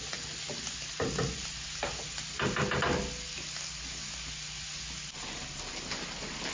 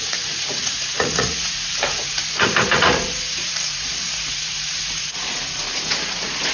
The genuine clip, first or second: first